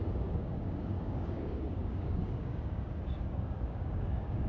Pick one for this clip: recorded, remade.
remade